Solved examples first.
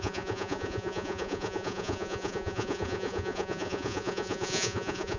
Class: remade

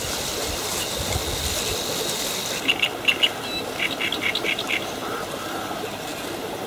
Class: recorded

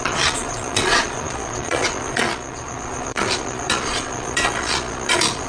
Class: remade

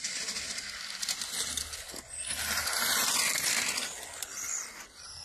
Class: recorded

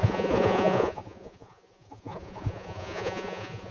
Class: remade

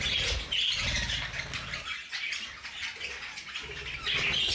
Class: recorded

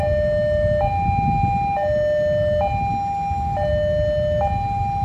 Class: recorded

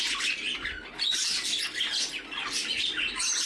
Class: recorded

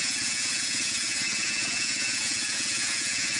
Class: remade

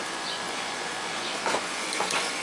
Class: remade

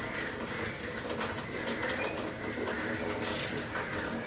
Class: recorded